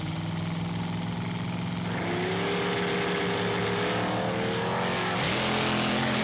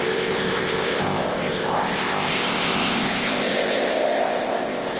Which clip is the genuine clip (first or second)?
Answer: first